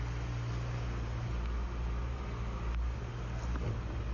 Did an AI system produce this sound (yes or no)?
no